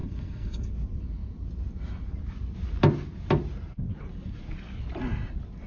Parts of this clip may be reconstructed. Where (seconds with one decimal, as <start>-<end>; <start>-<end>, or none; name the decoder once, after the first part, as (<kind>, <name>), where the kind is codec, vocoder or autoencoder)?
0.0-0.7 (codec, SNAC)